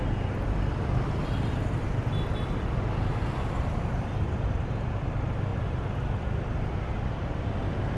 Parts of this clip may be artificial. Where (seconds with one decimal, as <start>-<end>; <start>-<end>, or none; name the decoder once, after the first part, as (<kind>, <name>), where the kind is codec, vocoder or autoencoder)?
none